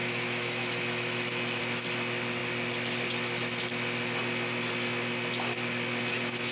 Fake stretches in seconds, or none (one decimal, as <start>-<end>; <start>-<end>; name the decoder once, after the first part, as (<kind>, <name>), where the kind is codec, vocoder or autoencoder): 0.0-1.6 (autoencoder, DAC-VAE)